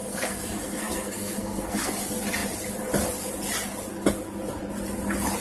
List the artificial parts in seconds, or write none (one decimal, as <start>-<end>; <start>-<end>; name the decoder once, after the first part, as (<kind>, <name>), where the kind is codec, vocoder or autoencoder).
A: 0.0-1.9 (codec, SNAC)